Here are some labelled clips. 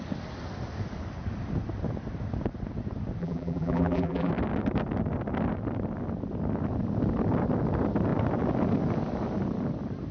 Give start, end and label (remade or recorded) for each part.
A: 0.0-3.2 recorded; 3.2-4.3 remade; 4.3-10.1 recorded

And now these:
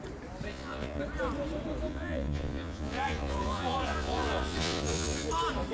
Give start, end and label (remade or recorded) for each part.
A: 0.0-0.5 recorded; 0.5-1.0 remade; 1.0-1.9 recorded; 1.9-5.3 remade; 5.3-5.7 recorded